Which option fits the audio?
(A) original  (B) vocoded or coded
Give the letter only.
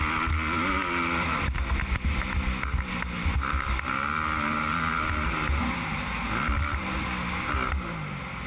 A